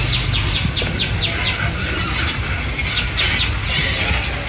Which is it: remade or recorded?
recorded